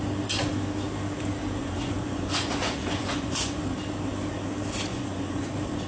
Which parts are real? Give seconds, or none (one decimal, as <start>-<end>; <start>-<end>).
0.0-1.6; 3.6-4.9; 5.5-5.9